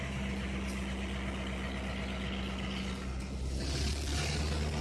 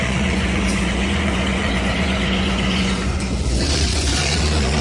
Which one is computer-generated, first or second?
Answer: second